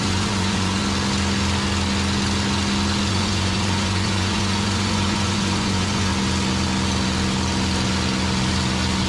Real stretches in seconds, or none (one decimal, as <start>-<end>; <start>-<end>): 0.8-3.1; 6.1-9.1